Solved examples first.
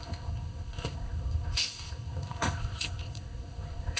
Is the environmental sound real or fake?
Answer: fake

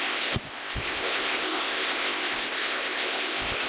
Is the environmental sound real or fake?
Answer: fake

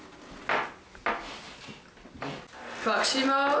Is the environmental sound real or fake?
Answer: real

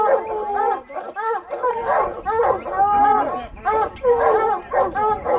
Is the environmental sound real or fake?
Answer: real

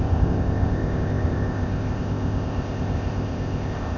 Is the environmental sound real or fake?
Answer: fake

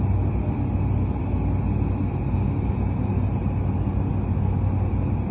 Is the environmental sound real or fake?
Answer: real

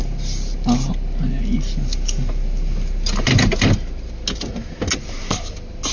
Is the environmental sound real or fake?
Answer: real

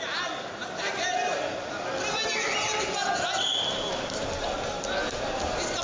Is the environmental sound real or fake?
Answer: real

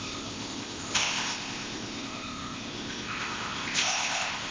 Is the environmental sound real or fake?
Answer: fake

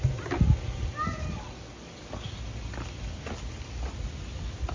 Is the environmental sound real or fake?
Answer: real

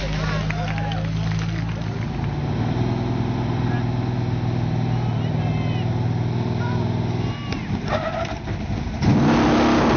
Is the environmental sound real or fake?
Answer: real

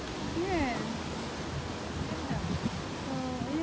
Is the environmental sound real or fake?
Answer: real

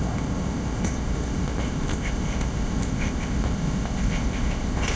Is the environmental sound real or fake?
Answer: fake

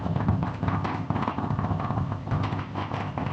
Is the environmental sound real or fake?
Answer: fake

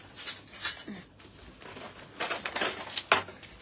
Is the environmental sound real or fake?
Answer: real